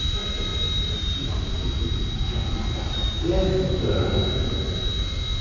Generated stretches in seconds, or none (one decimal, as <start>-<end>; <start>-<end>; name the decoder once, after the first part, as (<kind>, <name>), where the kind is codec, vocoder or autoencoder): none